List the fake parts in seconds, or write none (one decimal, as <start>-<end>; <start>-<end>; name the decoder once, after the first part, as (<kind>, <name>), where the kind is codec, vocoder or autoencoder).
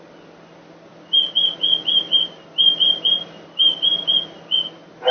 none